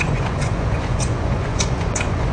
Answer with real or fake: fake